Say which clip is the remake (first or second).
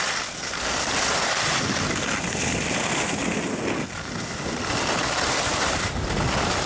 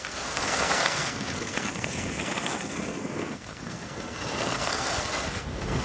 second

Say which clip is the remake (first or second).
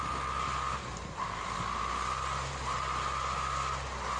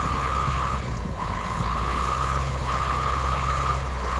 second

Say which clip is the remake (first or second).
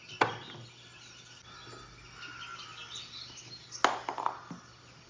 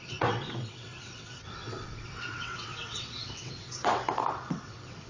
second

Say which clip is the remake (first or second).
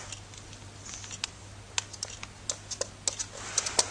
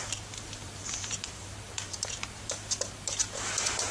second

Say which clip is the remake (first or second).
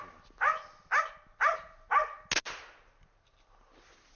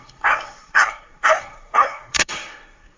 second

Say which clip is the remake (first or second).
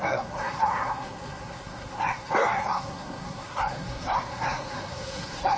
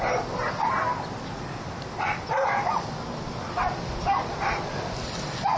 first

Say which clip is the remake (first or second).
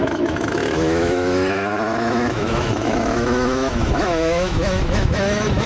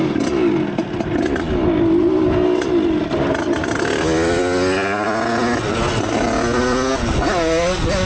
first